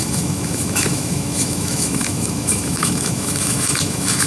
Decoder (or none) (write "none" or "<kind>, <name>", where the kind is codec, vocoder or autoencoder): autoencoder, DAC-VAE